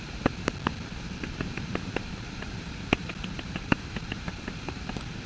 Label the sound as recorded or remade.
remade